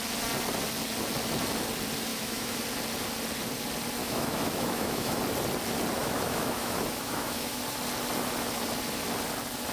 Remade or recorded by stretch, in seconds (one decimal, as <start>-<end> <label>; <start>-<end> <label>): 0.0-2.1 recorded; 2.1-2.6 remade; 2.6-4.0 recorded; 4.0-5.2 remade; 5.2-6.0 recorded; 6.0-7.6 remade; 7.6-9.7 recorded